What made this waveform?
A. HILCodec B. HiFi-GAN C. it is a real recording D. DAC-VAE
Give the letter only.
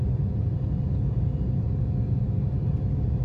C